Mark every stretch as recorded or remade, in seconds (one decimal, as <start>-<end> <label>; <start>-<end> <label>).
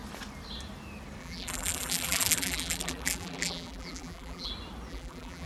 0.0-1.2 recorded; 1.2-4.5 remade; 4.5-4.9 recorded; 4.9-5.5 remade